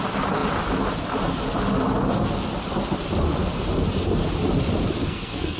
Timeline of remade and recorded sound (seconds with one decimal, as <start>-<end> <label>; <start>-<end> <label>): 0.0-5.0 recorded; 5.0-5.6 remade

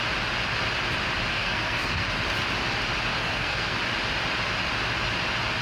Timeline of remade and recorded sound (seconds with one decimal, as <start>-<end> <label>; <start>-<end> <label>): 0.0-1.3 recorded; 1.3-2.1 remade; 2.1-3.1 recorded; 3.1-3.8 remade; 3.8-5.6 recorded

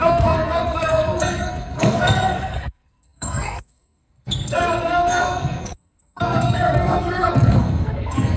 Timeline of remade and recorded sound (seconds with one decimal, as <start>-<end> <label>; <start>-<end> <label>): 0.0-8.4 remade

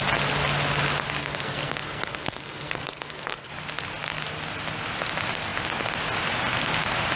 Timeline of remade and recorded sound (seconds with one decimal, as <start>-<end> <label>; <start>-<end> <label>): 0.0-1.2 recorded; 1.2-3.5 remade; 3.5-7.2 recorded

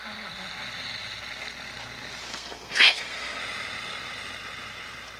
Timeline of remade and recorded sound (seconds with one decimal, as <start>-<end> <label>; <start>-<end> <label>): 0.0-2.3 recorded; 2.3-3.4 remade; 3.4-5.2 recorded

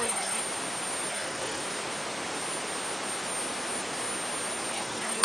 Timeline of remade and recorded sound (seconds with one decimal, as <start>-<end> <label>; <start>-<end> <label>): 0.0-0.4 remade; 0.4-1.1 recorded; 1.1-1.6 remade; 1.6-4.7 recorded; 4.7-5.2 remade

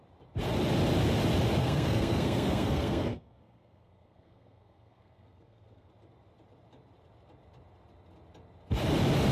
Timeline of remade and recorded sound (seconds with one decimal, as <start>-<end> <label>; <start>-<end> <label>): 0.0-1.6 recorded; 1.6-5.9 remade; 5.9-9.3 recorded